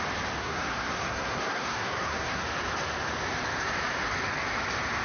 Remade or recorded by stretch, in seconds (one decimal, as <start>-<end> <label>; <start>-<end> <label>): 0.0-0.4 recorded; 0.4-2.4 remade; 2.4-5.0 recorded

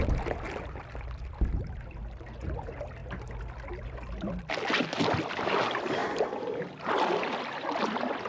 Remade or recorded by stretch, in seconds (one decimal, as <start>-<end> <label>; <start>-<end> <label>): 0.0-8.3 recorded

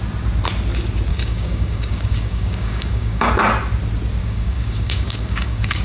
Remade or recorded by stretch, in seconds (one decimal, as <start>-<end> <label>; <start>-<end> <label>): 0.0-1.1 recorded; 1.1-3.3 remade; 3.3-4.2 recorded; 4.2-5.8 remade

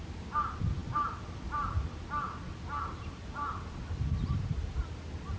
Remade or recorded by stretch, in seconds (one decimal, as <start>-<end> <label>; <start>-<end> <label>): 0.0-5.4 recorded

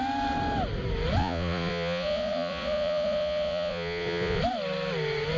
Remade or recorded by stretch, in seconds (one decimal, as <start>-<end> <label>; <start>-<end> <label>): 0.0-1.2 recorded; 1.2-4.4 remade; 4.4-5.4 recorded